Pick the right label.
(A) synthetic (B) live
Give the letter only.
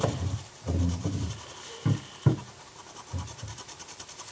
A